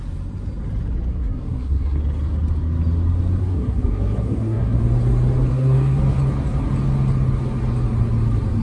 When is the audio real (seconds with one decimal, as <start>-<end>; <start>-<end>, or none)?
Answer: 0.0-1.1; 2.0-3.4; 4.8-5.5; 6.0-8.6